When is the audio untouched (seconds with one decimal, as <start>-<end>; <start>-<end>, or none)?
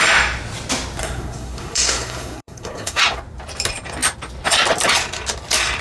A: 0.0-1.0; 3.0-5.8